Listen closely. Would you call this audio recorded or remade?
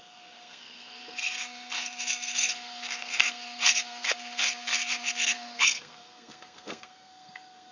remade